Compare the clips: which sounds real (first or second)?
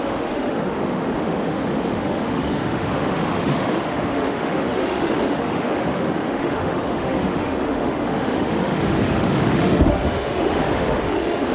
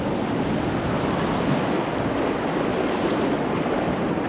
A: second